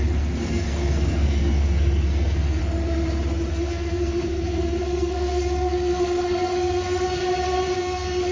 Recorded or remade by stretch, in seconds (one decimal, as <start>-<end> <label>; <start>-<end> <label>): 0.0-2.6 remade; 2.6-3.5 recorded; 3.5-7.2 remade; 7.2-7.8 recorded; 7.8-8.3 remade